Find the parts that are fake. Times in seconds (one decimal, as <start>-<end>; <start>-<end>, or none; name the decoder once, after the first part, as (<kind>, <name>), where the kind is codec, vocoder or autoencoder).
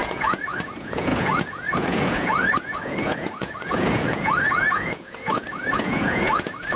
0.0-6.8 (vocoder, Vocos)